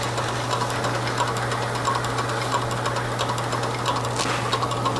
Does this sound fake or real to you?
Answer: real